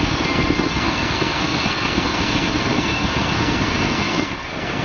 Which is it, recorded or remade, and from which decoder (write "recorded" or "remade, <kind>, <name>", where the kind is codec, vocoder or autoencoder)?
remade, codec, SNAC